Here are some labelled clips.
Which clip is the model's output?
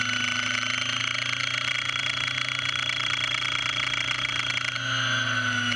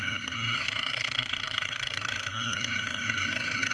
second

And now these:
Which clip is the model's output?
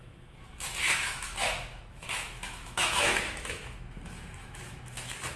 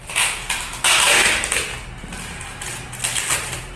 first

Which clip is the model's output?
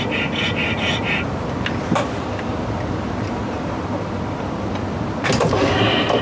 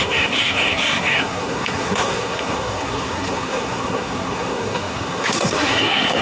second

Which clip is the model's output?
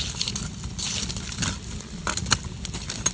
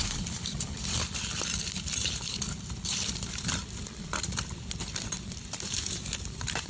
second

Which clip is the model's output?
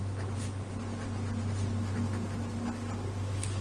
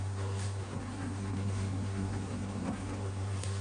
second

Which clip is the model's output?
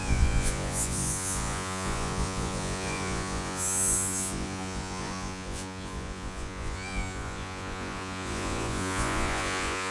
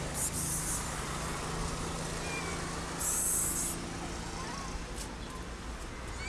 first